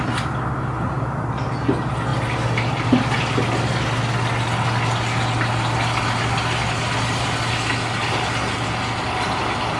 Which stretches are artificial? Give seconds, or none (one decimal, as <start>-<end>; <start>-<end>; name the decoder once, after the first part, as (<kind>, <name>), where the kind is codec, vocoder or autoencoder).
none